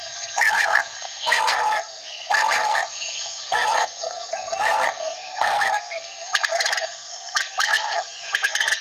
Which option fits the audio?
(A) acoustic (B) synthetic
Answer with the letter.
B